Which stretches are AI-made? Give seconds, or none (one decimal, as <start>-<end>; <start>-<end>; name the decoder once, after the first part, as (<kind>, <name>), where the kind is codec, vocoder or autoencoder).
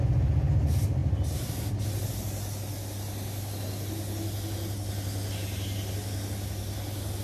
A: none